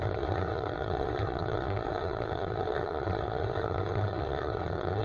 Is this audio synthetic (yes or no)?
yes